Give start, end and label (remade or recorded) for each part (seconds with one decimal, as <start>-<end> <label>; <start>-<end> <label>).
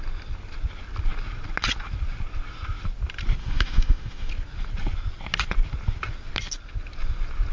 0.0-3.4 recorded; 3.4-4.3 remade; 4.3-7.5 recorded